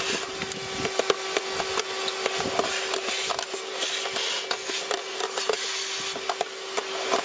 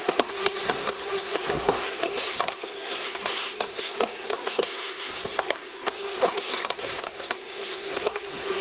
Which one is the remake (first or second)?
second